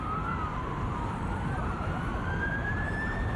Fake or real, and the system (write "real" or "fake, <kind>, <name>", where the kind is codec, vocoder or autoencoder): fake, vocoder, BigVGAN v2